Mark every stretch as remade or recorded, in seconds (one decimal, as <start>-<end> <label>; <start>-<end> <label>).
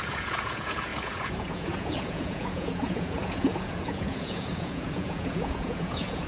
0.0-6.3 remade